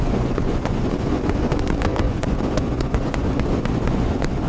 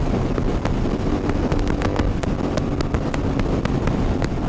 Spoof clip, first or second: first